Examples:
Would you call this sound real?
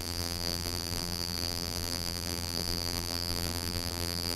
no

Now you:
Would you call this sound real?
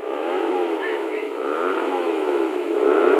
no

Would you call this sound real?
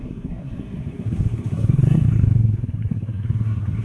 no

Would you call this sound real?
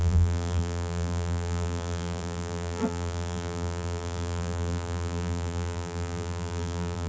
no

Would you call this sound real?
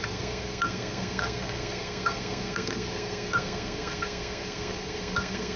no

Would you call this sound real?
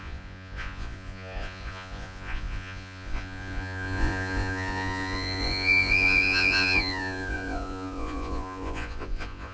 no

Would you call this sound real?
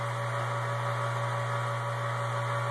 yes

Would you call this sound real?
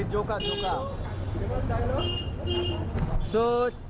yes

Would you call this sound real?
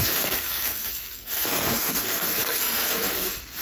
no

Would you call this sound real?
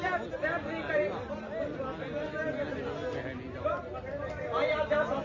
yes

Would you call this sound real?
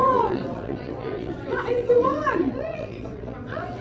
no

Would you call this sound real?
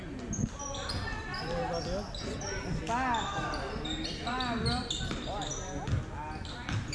yes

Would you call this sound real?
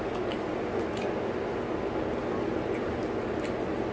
yes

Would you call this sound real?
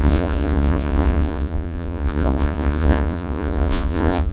no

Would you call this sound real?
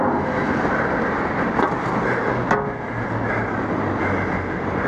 yes